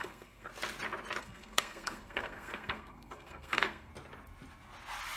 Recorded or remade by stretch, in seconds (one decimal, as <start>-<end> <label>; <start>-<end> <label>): 0.0-0.5 remade; 0.5-1.2 recorded; 1.2-3.9 remade; 3.9-5.2 recorded